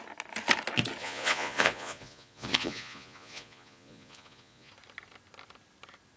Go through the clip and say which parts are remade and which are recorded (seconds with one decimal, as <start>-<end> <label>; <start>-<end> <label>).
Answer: 0.0-1.0 recorded; 1.0-4.7 remade; 4.7-6.2 recorded